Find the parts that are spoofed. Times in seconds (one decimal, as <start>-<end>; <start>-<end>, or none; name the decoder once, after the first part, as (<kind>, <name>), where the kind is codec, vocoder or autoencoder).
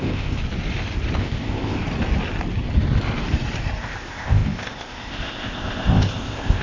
0.0-0.4 (codec, ZipCodec); 1.2-1.8; 3.8-6.6